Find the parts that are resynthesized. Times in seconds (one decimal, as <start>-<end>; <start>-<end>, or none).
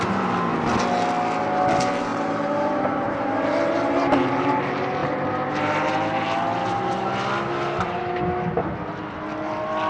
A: 2.1-4.6